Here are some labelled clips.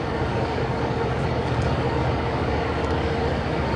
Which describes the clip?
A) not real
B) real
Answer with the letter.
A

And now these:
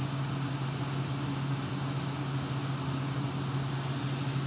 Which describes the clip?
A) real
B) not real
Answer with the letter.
A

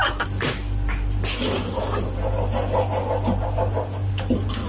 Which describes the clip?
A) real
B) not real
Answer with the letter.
A